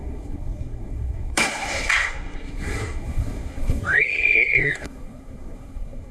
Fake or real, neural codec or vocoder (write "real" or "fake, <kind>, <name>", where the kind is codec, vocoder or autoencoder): fake, codec, SNAC